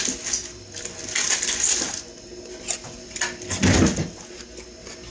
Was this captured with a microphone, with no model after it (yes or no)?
yes